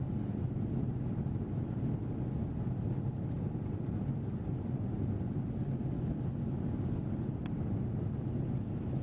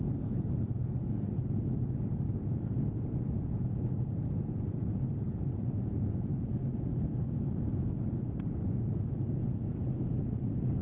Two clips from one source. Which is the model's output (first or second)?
second